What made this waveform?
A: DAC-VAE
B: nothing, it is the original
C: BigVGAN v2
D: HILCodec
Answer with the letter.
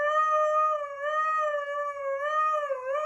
B